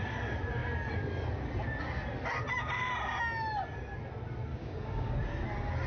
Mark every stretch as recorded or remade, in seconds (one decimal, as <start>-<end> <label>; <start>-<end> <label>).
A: 0.0-4.5 recorded; 4.5-5.1 remade; 5.1-5.9 recorded